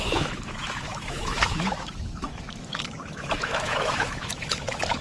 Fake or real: fake